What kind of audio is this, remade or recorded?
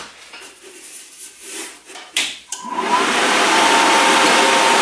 remade